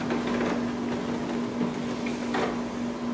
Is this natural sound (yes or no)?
yes